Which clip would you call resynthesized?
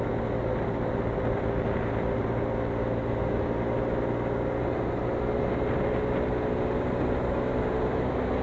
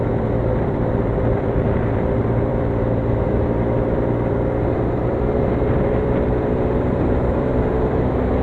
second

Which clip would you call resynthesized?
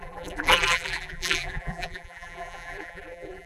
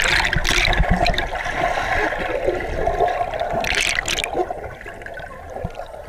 first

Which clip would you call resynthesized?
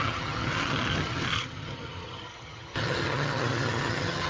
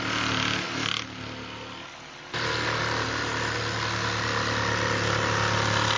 first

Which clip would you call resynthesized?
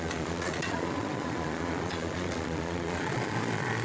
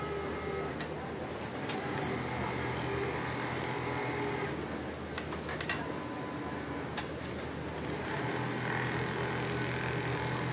first